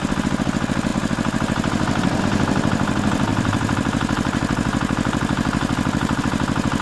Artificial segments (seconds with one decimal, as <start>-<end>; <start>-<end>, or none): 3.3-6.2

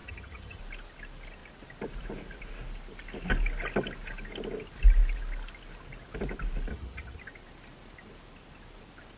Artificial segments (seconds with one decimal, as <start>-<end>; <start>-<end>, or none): 0.0-0.6; 6.7-7.2

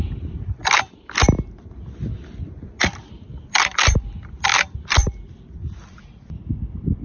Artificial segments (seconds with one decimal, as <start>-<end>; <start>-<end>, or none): none

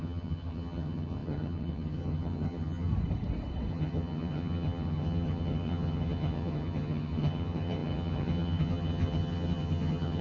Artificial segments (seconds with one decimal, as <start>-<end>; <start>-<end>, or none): 0.0-2.9; 3.7-10.2